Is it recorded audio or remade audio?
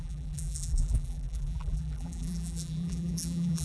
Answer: remade